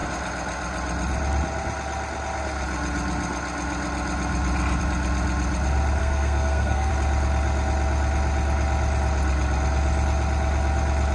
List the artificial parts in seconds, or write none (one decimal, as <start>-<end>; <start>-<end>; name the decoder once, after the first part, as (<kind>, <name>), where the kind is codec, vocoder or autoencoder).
6.0-6.9 (codec, SNAC)